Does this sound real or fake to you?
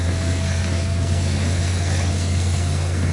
fake